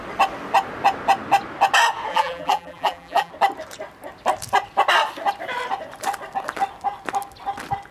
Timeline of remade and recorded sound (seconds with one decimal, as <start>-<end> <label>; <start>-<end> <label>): 0.0-2.1 recorded; 2.1-3.3 remade; 3.3-7.9 recorded